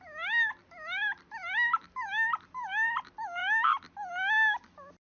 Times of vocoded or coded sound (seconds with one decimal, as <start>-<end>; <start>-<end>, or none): none